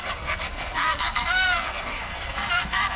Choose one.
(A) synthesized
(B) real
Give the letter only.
A